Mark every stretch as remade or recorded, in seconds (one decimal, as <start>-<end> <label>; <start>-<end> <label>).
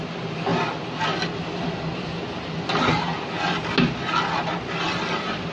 0.0-5.5 recorded